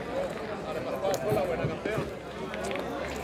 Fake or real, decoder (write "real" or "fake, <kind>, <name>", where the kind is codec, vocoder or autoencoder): real